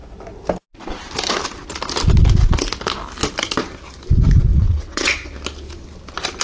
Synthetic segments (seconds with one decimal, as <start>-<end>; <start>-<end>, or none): 4.5-5.3